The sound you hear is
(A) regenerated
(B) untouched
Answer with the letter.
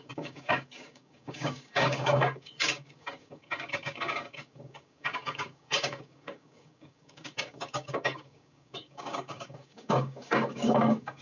A